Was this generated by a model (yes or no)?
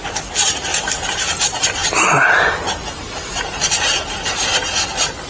no